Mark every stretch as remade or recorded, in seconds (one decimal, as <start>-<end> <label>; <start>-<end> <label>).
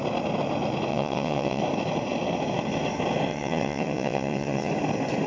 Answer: 0.0-0.9 recorded; 0.9-1.6 remade; 1.6-3.3 recorded; 3.3-4.7 remade; 4.7-5.3 recorded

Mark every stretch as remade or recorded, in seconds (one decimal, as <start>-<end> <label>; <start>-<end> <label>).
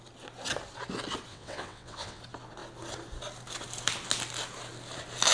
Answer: 0.0-1.3 recorded; 1.3-2.2 remade; 2.2-5.3 recorded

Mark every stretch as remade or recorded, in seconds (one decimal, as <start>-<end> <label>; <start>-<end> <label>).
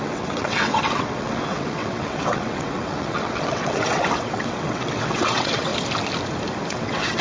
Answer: 0.0-5.7 remade; 5.7-6.7 recorded; 6.7-7.2 remade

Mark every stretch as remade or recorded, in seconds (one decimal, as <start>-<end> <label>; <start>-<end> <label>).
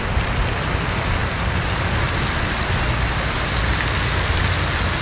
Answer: 0.0-5.0 recorded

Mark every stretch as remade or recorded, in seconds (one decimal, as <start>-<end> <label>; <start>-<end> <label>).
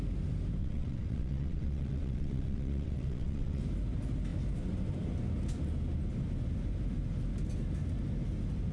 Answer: 0.0-0.6 recorded; 0.6-3.6 remade; 3.6-8.7 recorded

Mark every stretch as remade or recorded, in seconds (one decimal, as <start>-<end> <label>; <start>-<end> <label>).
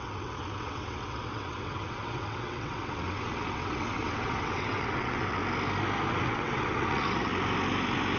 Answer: 0.0-5.4 remade; 5.4-6.1 recorded; 6.1-7.3 remade; 7.3-8.2 recorded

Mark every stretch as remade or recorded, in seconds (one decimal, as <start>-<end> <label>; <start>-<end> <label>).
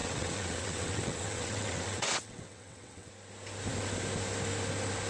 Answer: 0.0-3.1 remade; 3.1-5.1 recorded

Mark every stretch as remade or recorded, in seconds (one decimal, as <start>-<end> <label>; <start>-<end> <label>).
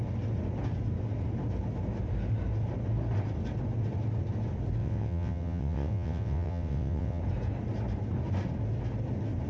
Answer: 0.0-4.8 recorded; 4.8-7.2 remade; 7.2-9.5 recorded